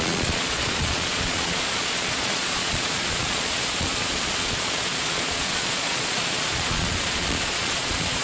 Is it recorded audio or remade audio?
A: remade